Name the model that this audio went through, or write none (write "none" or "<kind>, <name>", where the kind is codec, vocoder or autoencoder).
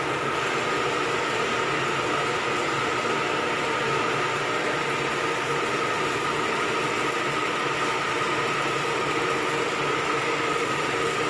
none